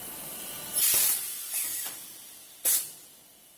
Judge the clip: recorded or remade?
recorded